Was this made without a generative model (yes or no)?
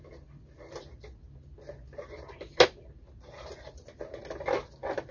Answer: yes